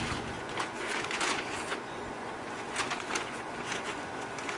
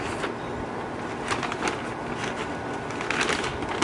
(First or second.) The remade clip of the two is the first